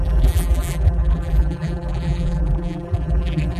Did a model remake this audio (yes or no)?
yes